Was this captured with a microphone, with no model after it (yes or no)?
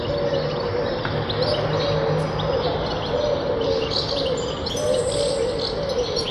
yes